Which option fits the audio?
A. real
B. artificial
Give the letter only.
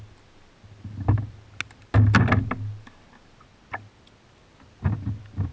A